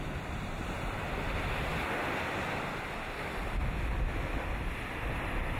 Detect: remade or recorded recorded